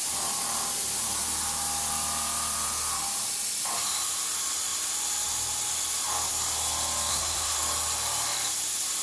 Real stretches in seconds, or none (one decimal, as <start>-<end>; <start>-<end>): 0.0-7.1; 7.6-9.0